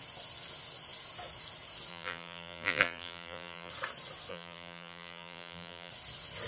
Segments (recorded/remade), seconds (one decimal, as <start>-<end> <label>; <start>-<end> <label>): 0.0-1.9 recorded; 1.9-3.7 remade; 3.7-4.3 recorded; 4.3-5.9 remade; 5.9-6.5 recorded